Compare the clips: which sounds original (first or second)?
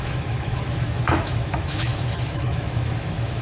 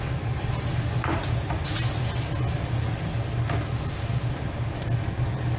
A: second